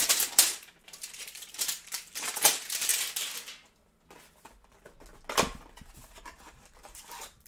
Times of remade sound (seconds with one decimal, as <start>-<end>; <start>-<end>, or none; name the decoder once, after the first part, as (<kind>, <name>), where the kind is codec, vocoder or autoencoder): 0.0-2.9 (vocoder, BigVGAN v2); 6.4-7.5